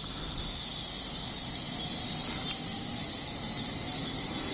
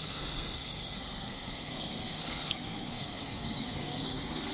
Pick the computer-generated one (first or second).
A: second